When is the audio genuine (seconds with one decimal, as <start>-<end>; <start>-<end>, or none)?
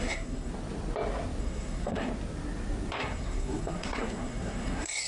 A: 0.5-1.4; 2.1-2.9